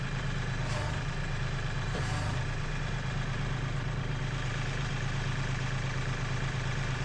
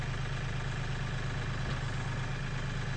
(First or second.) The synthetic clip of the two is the first